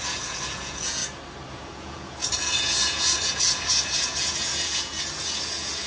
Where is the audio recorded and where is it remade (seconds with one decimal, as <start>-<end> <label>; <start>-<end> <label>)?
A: 0.0-1.0 remade; 1.0-1.5 recorded; 1.5-5.9 remade